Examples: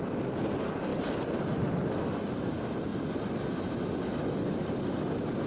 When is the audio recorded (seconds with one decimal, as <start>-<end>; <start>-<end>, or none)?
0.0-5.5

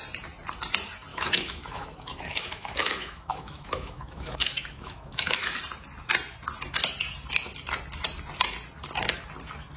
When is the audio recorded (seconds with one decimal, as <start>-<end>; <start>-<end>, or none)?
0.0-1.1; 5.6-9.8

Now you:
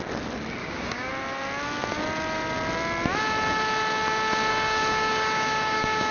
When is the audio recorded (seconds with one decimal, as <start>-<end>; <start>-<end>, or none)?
0.0-0.6; 1.1-4.5

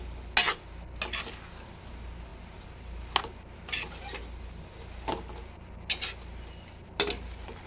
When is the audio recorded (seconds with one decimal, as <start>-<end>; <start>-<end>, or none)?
0.0-7.7